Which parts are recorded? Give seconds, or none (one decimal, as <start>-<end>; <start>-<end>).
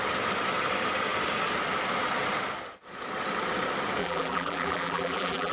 0.0-4.0